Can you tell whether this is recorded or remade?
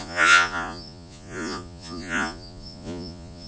remade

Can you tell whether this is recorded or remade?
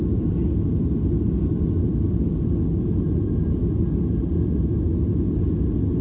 recorded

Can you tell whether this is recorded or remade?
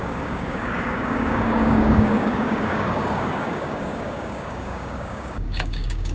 remade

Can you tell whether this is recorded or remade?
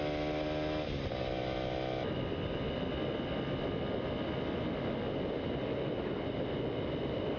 recorded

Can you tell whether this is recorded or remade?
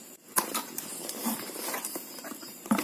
remade